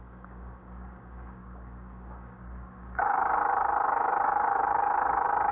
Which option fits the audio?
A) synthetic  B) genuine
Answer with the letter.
A